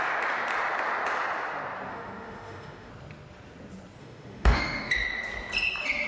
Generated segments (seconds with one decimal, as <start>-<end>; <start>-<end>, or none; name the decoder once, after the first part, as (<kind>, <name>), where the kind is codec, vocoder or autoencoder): 1.9-2.9 (autoencoder, DAC-VAE); 4.0-4.9